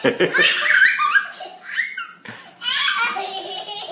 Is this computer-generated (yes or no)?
no